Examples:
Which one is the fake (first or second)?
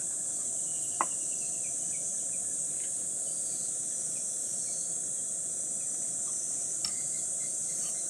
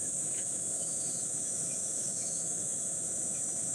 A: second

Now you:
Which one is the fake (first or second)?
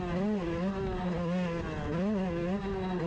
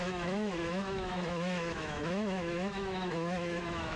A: second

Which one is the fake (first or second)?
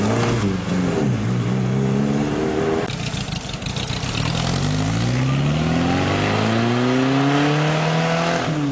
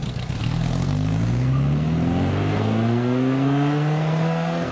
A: second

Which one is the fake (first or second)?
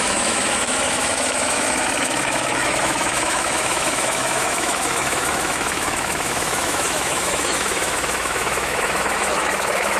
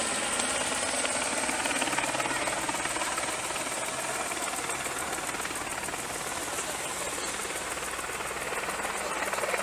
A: first